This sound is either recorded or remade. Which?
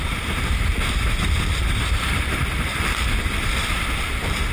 remade